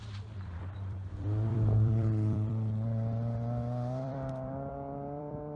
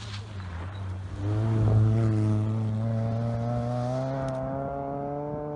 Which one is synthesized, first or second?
first